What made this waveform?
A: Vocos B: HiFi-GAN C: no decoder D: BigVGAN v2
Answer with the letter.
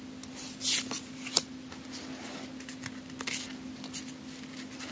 C